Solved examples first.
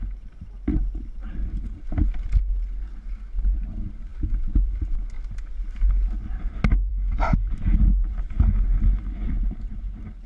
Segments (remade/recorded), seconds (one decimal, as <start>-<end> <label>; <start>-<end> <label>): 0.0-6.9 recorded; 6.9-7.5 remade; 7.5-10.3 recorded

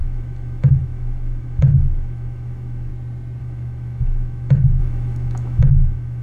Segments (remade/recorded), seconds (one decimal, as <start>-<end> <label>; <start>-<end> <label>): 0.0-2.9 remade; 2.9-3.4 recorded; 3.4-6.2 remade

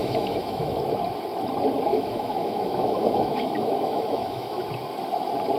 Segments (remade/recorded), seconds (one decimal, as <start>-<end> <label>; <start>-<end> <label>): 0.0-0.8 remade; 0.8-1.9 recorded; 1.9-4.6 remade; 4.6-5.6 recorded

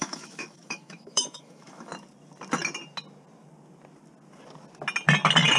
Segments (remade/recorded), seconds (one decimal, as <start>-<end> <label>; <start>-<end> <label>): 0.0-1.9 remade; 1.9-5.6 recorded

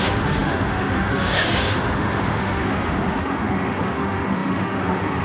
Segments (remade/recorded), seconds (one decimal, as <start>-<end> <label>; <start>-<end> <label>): 0.0-5.2 remade

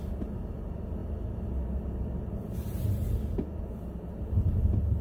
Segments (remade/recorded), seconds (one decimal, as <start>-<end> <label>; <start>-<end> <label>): 0.0-5.0 recorded

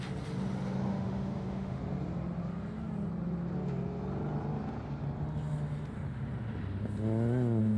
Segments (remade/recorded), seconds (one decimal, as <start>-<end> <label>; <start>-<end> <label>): 0.0-0.9 recorded; 0.9-1.8 remade; 1.8-7.8 recorded